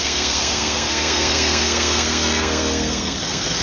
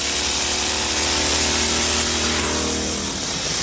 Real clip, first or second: second